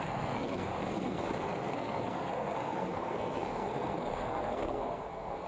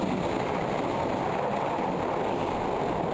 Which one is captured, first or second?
second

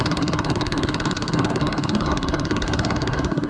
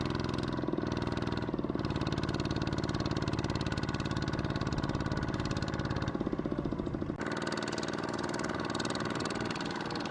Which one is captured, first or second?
second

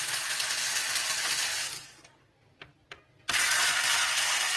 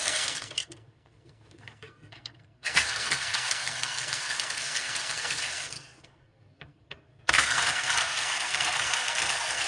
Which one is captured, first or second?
first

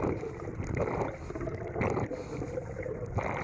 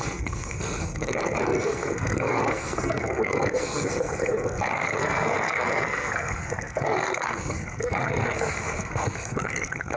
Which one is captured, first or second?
first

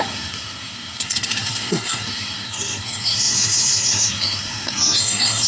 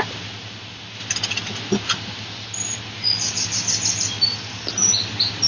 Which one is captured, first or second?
second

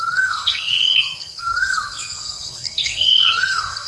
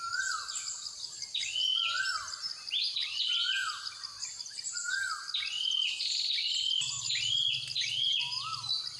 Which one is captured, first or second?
second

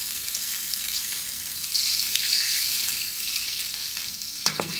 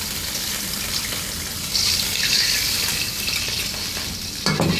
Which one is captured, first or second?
second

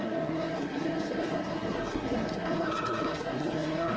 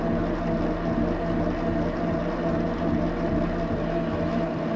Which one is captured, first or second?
second